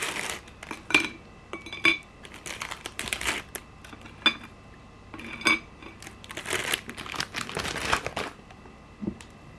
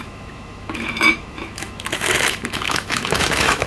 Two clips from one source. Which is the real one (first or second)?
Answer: first